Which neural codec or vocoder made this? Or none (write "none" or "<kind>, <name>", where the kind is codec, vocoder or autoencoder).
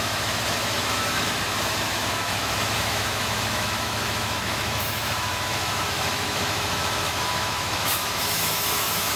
autoencoder, DAC-VAE